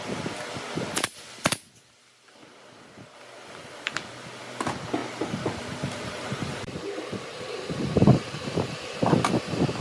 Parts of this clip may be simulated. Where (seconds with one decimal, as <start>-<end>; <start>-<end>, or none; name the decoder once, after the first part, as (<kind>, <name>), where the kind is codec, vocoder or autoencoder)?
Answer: 5.0-9.3 (vocoder, BigVGAN v2)